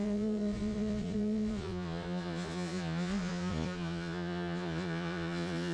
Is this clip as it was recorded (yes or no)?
no